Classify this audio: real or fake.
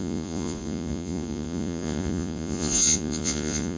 fake